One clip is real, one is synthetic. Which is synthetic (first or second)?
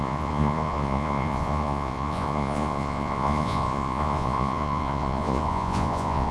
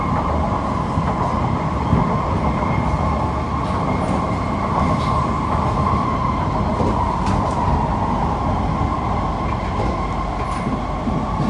first